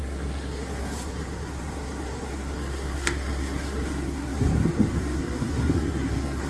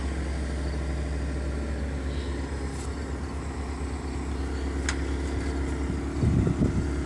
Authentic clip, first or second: second